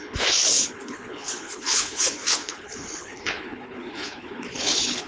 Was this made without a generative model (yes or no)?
no